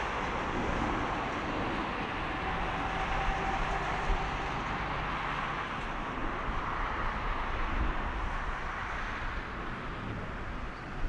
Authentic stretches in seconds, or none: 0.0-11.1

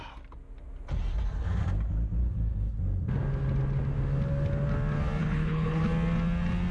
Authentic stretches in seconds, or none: 0.0-2.2; 2.8-5.2; 5.8-6.7

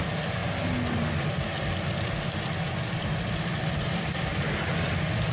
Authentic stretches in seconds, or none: 0.0-5.3